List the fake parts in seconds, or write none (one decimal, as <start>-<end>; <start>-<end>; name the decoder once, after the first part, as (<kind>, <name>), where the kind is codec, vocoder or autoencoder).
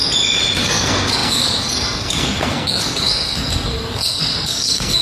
0.6-5.0 (codec, SNAC)